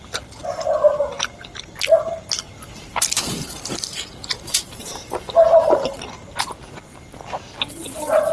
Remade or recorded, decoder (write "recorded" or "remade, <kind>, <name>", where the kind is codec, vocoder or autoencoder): recorded